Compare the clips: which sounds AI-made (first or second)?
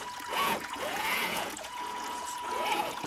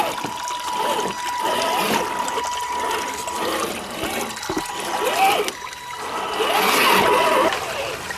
first